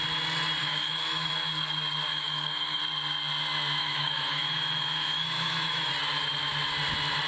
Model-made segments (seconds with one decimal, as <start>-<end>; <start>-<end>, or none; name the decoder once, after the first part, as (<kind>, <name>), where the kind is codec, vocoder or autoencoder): 0.6-1.3 (autoencoder, DAC-VAE); 2.1-2.8; 3.8-5.9